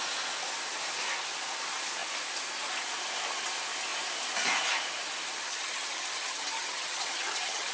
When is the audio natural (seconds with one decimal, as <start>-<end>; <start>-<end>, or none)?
0.0-5.5